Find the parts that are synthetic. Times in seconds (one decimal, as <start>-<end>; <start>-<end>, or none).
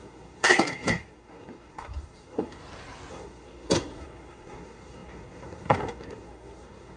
0.0-2.6; 3.1-7.0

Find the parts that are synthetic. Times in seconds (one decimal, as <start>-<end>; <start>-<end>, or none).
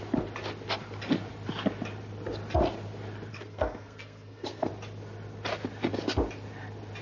3.3-4.7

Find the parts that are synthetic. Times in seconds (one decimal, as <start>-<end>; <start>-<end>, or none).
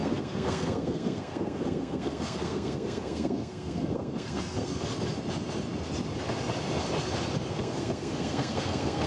0.0-4.9; 7.5-9.1